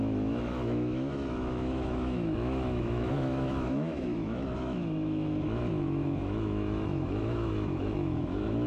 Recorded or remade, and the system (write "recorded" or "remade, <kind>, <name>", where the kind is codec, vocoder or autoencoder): remade, autoencoder, DAC-VAE